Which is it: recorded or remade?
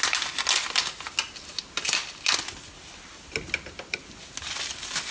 recorded